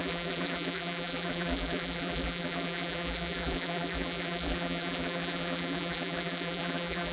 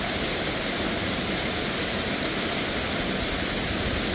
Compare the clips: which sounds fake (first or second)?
first